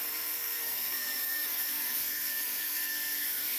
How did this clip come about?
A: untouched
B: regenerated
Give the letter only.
B